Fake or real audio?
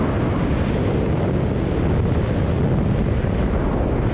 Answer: real